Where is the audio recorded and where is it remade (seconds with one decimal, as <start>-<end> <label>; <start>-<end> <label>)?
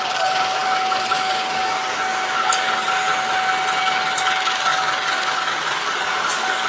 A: 0.0-3.1 remade; 3.1-3.8 recorded; 3.8-6.7 remade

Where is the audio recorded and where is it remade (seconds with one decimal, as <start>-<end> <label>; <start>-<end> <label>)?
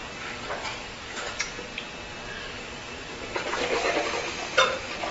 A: 0.0-1.3 remade; 1.3-2.4 recorded; 2.4-3.9 remade; 3.9-5.1 recorded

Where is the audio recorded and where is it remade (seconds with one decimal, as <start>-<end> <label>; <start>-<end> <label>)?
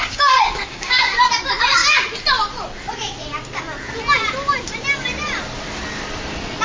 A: 0.0-1.3 remade; 1.3-6.6 recorded